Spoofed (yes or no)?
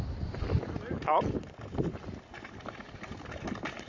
no